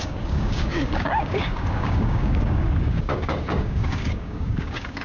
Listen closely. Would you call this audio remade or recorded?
remade